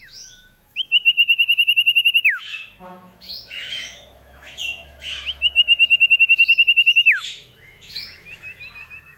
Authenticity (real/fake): fake